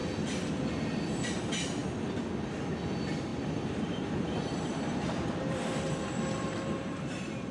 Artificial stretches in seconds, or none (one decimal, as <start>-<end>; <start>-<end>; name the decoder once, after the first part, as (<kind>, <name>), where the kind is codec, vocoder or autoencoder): 0.0-0.5 (vocoder, BigVGAN v2); 3.3-7.5

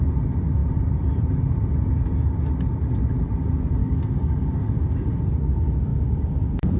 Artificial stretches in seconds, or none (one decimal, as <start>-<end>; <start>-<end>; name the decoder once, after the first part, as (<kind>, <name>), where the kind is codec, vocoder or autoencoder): 3.8-5.1 (codec, DAC); 5.9-6.8

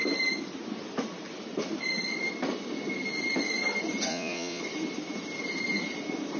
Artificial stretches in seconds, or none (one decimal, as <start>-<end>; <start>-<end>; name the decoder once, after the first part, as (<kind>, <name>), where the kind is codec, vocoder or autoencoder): 4.1-4.6 (vocoder, Vocos)

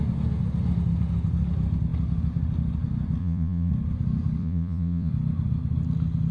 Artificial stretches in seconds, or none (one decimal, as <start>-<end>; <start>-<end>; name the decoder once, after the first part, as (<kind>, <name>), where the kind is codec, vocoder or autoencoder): 3.2-3.7 (vocoder, Vocos); 4.4-5.1

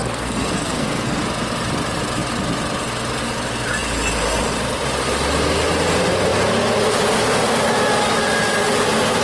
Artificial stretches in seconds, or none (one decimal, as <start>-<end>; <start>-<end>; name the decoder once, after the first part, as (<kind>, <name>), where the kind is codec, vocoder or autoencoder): 0.0-1.2 (codec, SNAC)

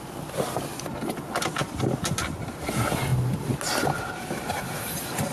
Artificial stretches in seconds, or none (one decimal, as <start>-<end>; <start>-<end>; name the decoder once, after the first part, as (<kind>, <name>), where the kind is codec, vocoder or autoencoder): none